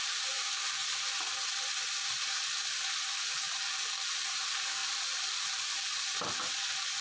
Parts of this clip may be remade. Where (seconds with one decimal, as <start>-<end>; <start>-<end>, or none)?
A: 0.0-0.8; 3.3-4.8; 5.3-7.0